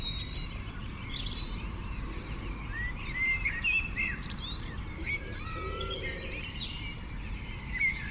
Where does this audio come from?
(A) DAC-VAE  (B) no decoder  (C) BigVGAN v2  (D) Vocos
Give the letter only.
C